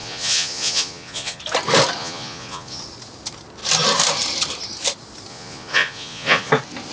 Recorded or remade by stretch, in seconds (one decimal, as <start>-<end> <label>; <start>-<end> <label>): 0.0-1.4 remade; 1.4-2.0 recorded; 2.0-2.8 remade; 2.8-5.3 recorded; 5.3-6.5 remade; 6.5-6.9 recorded